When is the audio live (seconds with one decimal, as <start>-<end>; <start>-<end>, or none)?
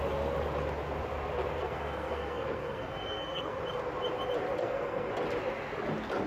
0.0-1.6; 3.6-4.6; 5.1-6.3